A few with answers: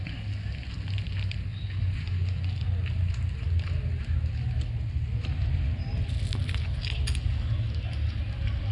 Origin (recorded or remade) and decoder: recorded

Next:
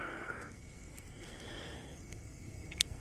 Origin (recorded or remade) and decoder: remade, codec, SNAC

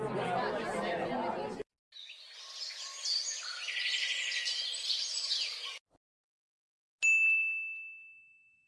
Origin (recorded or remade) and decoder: recorded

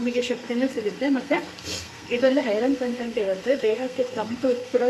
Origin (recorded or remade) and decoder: remade, codec, SNAC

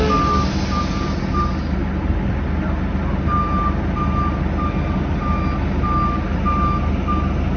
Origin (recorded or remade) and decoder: recorded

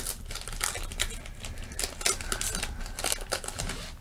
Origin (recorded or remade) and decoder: recorded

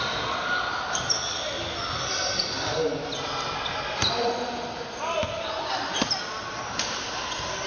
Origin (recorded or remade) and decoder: recorded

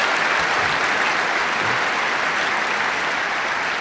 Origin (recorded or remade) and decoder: recorded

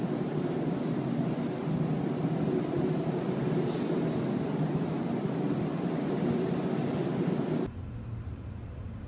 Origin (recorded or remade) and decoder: recorded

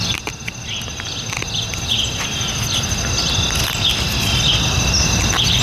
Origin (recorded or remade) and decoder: recorded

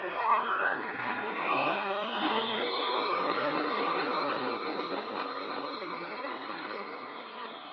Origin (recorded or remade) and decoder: remade, codec, SNAC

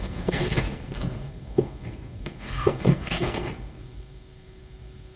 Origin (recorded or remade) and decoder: remade, codec, SNAC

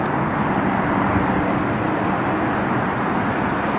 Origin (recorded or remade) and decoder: recorded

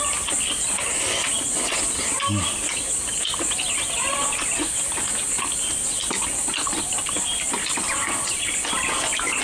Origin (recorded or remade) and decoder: recorded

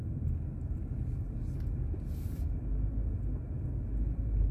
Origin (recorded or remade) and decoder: recorded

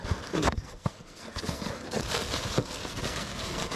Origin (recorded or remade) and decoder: remade, codec, SNAC